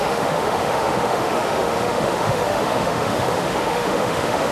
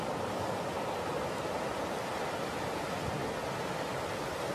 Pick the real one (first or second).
second